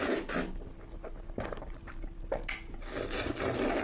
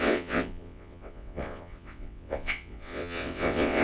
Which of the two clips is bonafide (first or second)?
first